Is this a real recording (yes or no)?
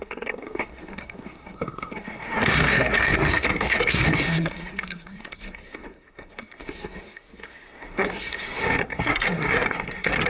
no